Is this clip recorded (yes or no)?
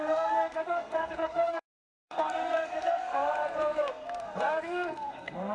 no